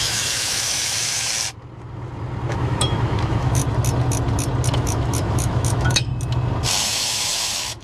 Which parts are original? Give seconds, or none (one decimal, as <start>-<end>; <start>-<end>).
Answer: 1.3-2.5; 3.6-4.7; 6.1-6.8